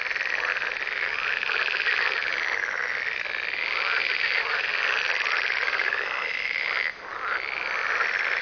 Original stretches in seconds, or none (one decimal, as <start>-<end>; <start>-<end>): 0.0-8.4